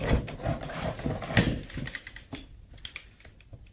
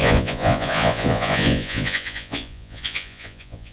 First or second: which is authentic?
first